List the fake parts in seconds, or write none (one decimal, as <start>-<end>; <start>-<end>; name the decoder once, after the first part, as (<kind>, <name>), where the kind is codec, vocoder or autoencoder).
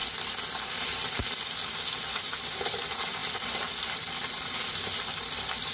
0.7-1.2 (vocoder, BigVGAN v2); 2.0-5.7